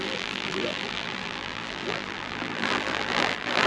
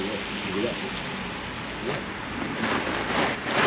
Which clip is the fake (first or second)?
first